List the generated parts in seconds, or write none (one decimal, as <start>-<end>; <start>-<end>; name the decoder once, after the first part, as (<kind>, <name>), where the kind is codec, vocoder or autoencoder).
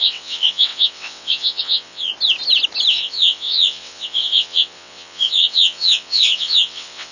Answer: 0.0-2.1 (vocoder, WaveNeXt); 2.9-7.1